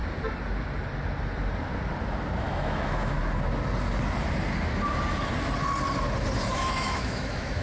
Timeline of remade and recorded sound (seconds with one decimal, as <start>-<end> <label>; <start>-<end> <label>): 0.0-2.4 recorded; 2.4-3.2 remade; 3.2-6.5 recorded; 6.5-7.6 remade

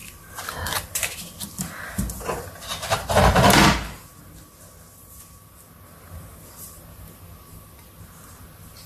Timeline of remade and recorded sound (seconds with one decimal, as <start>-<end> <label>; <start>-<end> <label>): 0.0-8.9 recorded

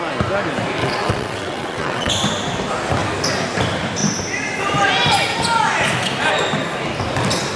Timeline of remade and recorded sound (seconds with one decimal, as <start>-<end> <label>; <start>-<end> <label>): 0.0-0.8 recorded; 0.8-2.1 remade; 2.1-7.6 recorded

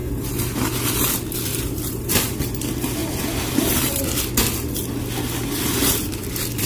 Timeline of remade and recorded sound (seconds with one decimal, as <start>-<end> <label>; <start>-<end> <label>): 0.0-0.6 remade; 0.6-1.5 recorded; 1.5-2.4 remade; 2.4-3.0 recorded; 3.0-4.2 remade; 4.2-5.8 recorded; 5.8-6.7 remade

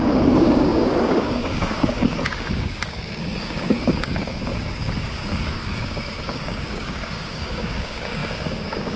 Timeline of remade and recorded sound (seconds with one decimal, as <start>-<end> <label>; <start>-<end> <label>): 0.0-9.0 remade

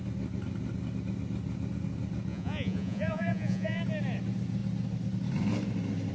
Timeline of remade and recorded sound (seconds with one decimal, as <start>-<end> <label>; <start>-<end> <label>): 0.0-2.3 recorded; 2.3-3.8 remade; 3.8-6.1 recorded

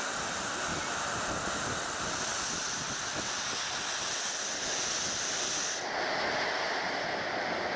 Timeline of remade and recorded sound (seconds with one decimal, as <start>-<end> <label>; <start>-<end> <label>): 0.0-7.8 recorded

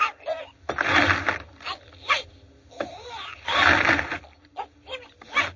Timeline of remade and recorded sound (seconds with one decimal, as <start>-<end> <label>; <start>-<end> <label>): 0.0-5.6 recorded